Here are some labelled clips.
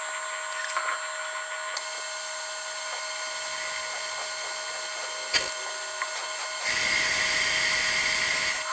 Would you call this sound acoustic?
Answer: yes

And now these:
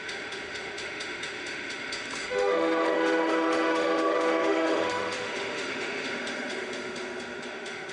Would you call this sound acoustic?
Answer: no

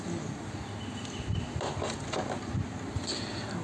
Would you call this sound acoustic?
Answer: yes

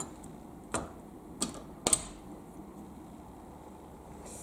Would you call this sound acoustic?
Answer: yes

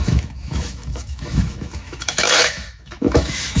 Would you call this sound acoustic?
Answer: no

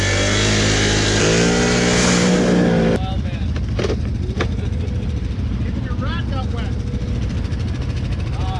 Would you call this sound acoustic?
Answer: yes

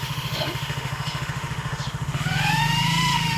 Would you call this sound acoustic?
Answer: no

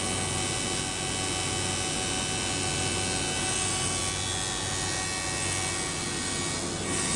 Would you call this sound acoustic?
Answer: yes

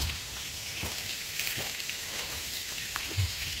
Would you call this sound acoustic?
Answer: no